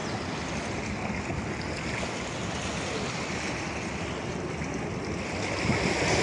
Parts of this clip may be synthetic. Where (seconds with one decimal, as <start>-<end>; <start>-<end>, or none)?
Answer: none